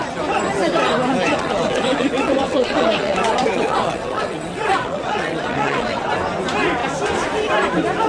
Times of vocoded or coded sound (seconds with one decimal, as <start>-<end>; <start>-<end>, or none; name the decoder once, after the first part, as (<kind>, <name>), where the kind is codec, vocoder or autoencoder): 1.3-6.1 (vocoder, WaveNeXt)